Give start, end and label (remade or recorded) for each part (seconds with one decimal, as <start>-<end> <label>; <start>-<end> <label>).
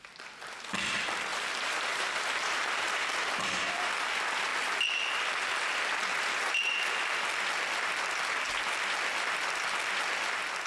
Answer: 0.0-1.3 recorded; 1.3-3.9 remade; 3.9-10.7 recorded